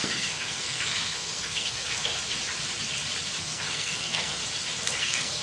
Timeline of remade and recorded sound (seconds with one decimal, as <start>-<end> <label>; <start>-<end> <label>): 0.0-2.1 remade; 2.1-3.4 recorded; 3.4-4.4 remade; 4.4-5.0 recorded; 5.0-5.4 remade